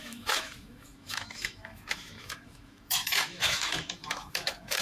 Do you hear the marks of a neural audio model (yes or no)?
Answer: yes